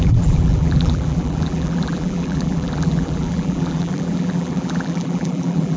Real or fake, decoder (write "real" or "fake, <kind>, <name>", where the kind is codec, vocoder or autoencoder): fake, vocoder, BigVGAN v2